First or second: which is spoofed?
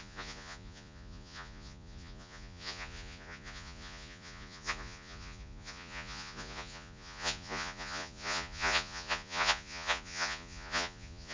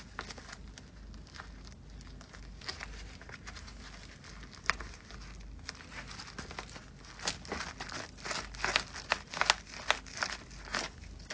first